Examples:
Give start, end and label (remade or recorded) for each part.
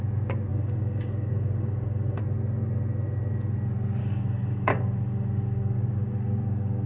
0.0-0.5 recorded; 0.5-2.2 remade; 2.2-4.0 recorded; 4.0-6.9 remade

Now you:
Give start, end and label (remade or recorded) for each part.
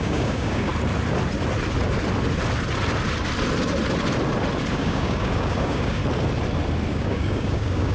0.0-0.7 remade; 0.7-4.7 recorded; 4.7-6.0 remade; 6.0-6.9 recorded; 6.9-7.9 remade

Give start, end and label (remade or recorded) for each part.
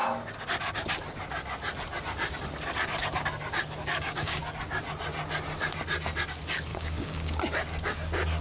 0.0-3.9 recorded; 3.9-4.4 remade; 4.4-6.7 recorded; 6.7-7.4 remade; 7.4-8.4 recorded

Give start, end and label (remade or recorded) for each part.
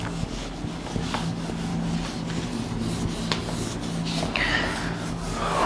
0.0-1.7 remade; 1.7-5.1 recorded; 5.1-5.7 remade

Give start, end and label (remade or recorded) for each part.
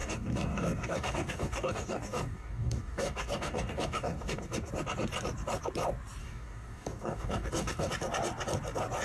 0.0-4.7 remade; 4.7-6.2 recorded; 6.2-7.9 remade; 7.9-9.0 recorded